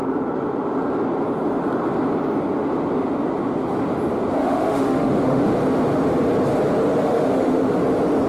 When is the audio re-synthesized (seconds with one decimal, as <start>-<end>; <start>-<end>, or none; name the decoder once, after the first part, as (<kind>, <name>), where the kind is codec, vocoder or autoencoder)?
4.4-5.5 (autoencoder, DAC-VAE); 7.0-7.8